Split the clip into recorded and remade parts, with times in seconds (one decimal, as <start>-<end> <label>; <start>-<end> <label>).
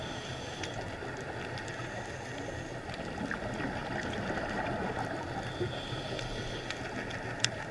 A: 0.0-3.8 recorded; 3.8-6.3 remade; 6.3-7.7 recorded